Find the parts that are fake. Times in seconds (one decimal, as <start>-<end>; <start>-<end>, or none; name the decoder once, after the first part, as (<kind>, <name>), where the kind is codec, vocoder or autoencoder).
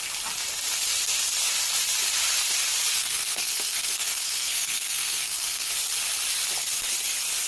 2.9-5.7 (codec, SNAC)